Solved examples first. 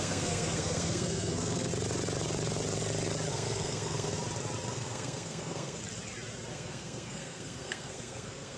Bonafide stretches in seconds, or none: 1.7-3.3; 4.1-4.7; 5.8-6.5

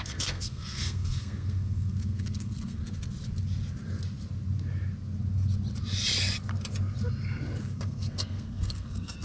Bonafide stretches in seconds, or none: 2.8-7.6

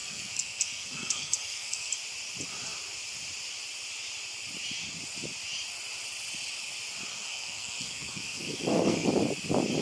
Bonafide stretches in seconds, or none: 1.9-7.1; 9.1-9.8

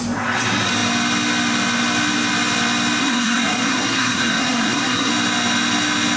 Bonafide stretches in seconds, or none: 0.0-3.0; 5.1-6.2

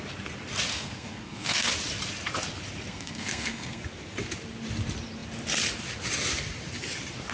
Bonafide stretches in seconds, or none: 0.0-0.7; 1.7-2.9; 3.8-7.3

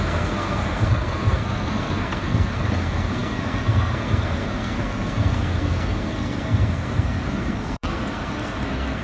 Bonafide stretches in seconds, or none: none

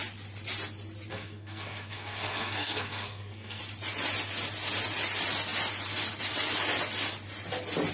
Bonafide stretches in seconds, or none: 0.0-1.1; 3.6-7.9

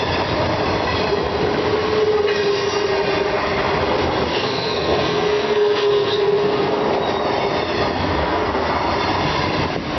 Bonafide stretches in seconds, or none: 0.0-4.3; 6.8-8.2; 8.7-10.0